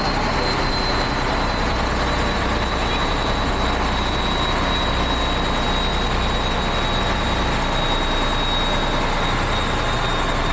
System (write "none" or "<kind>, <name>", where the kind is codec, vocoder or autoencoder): none